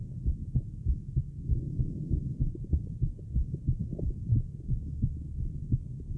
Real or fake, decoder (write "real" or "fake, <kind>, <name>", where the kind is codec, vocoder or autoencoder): real